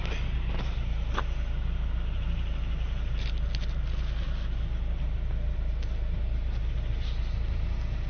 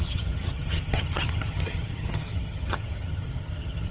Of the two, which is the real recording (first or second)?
first